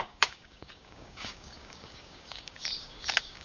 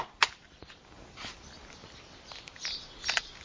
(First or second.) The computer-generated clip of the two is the first